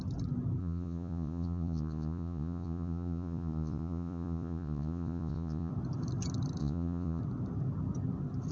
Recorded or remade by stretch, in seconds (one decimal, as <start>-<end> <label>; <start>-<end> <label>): 0.0-0.6 recorded; 0.6-5.7 remade; 5.7-6.6 recorded; 6.6-7.2 remade; 7.2-8.5 recorded